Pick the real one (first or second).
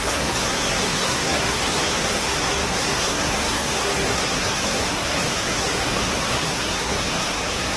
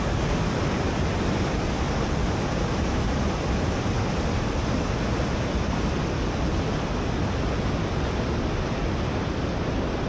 second